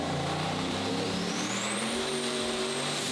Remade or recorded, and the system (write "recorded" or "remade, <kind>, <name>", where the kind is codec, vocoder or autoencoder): remade, vocoder, BigVGAN v2